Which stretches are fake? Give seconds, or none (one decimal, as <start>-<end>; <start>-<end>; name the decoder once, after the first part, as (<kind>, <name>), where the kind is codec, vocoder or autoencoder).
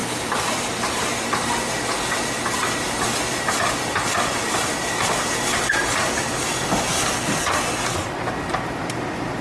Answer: 0.0-1.2 (vocoder, BigVGAN v2)